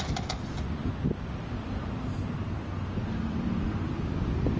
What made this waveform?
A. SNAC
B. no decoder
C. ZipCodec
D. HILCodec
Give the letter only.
B